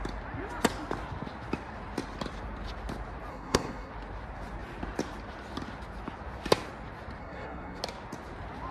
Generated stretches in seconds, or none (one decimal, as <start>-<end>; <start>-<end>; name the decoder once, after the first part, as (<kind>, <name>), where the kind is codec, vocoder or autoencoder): 3.3-3.9 (codec, SNAC); 7.2-7.8